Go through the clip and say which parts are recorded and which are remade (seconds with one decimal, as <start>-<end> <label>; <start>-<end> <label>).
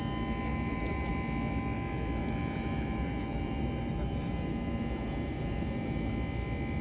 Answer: 0.0-0.5 recorded; 0.5-1.1 remade; 1.1-2.2 recorded; 2.2-6.1 remade; 6.1-6.8 recorded